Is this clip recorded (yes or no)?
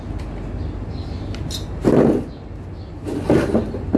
yes